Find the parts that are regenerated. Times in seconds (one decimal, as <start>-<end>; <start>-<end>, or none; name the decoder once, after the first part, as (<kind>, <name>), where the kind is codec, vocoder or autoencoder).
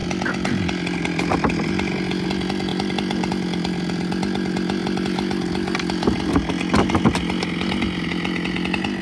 2.7-3.3 (vocoder, BigVGAN v2)